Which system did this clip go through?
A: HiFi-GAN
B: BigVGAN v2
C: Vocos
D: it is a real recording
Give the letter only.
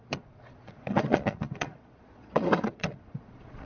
C